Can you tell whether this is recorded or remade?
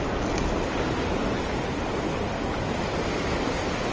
recorded